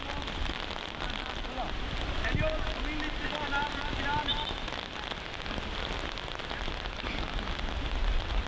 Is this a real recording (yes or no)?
yes